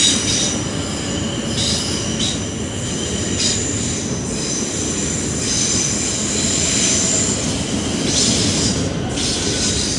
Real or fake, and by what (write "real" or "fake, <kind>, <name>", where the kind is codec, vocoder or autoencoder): real